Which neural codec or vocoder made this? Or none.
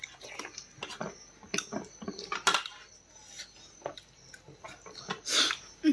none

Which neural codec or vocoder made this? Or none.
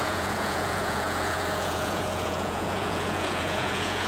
vocoder, Vocos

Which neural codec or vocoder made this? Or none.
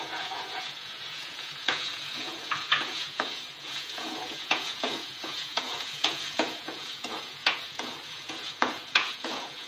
vocoder, Vocos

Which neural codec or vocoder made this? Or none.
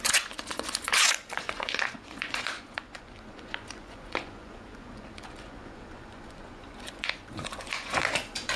vocoder, Vocos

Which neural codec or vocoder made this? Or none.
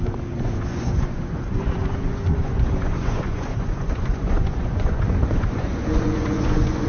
vocoder, Vocos